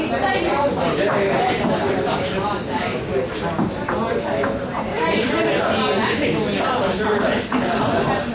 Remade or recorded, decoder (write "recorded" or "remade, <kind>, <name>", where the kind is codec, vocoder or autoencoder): recorded